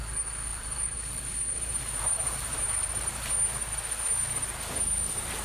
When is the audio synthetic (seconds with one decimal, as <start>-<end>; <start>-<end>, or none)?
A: 0.5-2.6